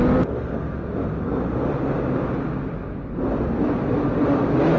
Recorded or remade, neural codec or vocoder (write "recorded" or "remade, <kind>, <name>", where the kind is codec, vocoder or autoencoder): recorded